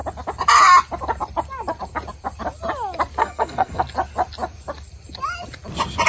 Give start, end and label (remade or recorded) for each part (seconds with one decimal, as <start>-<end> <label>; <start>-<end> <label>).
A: 0.0-3.2 recorded; 3.2-3.8 remade; 3.8-6.1 recorded